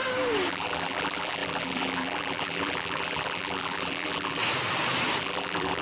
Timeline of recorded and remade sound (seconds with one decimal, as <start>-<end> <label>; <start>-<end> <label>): 0.0-0.5 recorded; 0.5-4.4 remade; 4.4-5.2 recorded; 5.2-5.8 remade

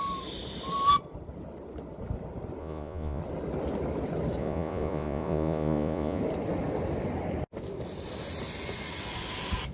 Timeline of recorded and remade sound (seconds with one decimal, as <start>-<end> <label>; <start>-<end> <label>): 0.0-2.6 recorded; 2.6-3.2 remade; 3.2-4.4 recorded; 4.4-6.2 remade; 6.2-9.7 recorded

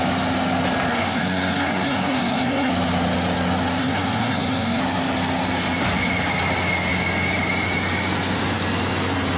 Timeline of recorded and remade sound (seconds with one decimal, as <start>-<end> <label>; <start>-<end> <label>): 0.0-0.9 recorded; 0.9-2.7 remade; 2.7-3.8 recorded; 3.8-4.8 remade; 4.8-9.4 recorded

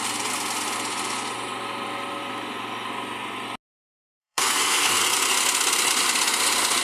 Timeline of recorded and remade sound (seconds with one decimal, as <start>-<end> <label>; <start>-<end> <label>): 0.0-4.2 recorded; 4.2-5.0 remade; 5.0-6.8 recorded

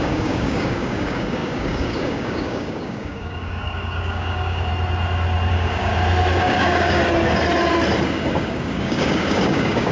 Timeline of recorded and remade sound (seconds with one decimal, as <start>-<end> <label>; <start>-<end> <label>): 0.0-4.7 remade; 4.7-5.5 recorded; 5.5-5.9 remade; 5.9-6.4 recorded; 6.4-7.0 remade; 7.0-8.1 recorded; 8.1-9.9 remade